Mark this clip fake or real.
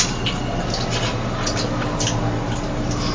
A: real